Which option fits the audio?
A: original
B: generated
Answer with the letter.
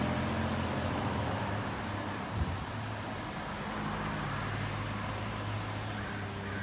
A